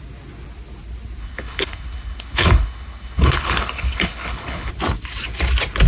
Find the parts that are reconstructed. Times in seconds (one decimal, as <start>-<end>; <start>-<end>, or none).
1.2-4.7